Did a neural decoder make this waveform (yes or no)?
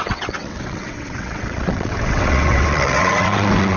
yes